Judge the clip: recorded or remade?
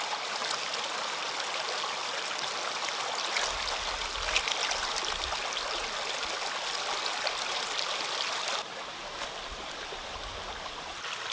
recorded